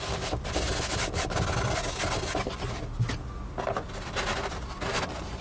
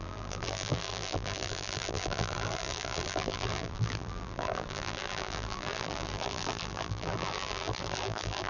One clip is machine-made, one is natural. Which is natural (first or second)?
first